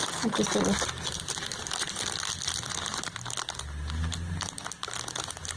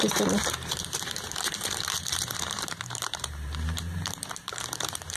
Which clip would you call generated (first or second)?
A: second